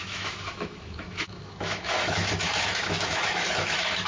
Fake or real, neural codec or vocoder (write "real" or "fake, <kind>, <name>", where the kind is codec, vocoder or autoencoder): fake, autoencoder, DAC-VAE